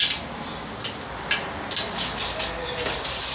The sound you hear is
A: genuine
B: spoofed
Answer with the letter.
A